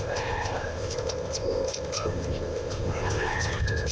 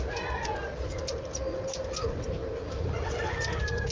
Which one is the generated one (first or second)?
first